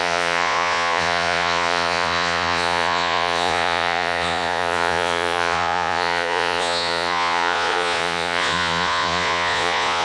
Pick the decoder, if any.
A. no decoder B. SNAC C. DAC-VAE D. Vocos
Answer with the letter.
D